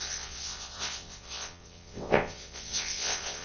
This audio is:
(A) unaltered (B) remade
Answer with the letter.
B